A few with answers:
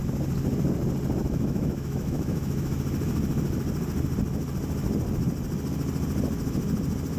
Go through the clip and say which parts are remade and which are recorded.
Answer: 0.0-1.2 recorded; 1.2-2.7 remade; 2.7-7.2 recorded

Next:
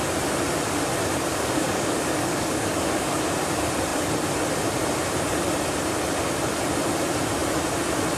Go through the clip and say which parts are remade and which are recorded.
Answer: 0.0-1.3 recorded; 1.3-3.2 remade; 3.2-8.2 recorded

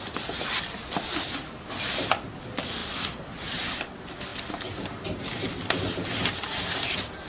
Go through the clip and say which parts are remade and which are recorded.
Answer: 0.0-7.3 recorded

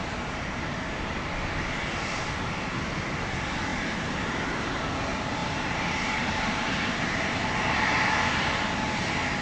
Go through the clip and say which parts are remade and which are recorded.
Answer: 0.0-3.7 recorded; 3.7-4.9 remade; 4.9-5.4 recorded; 5.4-8.0 remade; 8.0-9.4 recorded